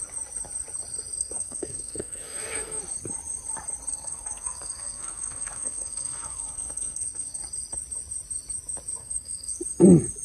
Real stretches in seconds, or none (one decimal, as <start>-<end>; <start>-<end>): 0.0-1.2; 2.8-3.9; 7.4-9.0; 9.6-10.2